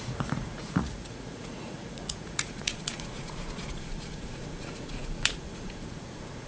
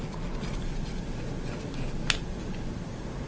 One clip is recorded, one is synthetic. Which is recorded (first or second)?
second